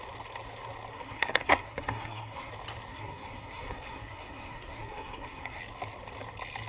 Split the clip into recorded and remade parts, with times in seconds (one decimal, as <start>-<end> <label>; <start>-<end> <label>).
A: 0.0-0.9 recorded; 0.9-2.5 remade; 2.5-2.9 recorded; 2.9-5.6 remade; 5.6-6.7 recorded